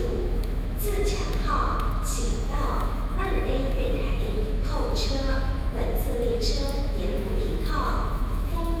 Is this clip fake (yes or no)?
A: yes